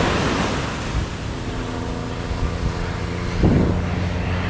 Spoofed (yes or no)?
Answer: no